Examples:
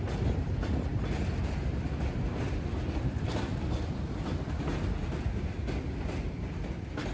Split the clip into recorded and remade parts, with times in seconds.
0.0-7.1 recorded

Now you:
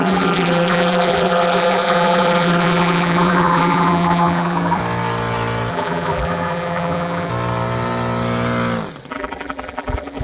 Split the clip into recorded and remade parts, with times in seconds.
0.0-4.8 remade; 4.8-5.7 recorded; 5.7-7.3 remade; 7.3-9.1 recorded; 9.1-10.2 remade

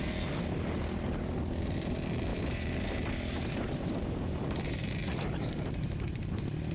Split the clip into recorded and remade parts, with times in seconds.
0.0-2.3 recorded; 2.3-6.3 remade; 6.3-6.7 recorded